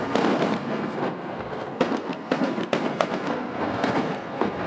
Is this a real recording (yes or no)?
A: no